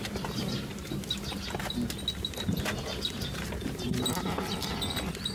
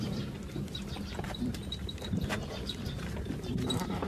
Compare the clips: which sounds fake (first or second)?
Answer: second